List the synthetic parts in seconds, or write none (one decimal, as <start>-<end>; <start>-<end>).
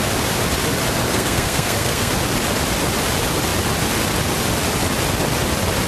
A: 1.1-2.1